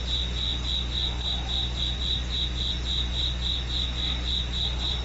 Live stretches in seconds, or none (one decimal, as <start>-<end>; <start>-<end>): 0.0-5.0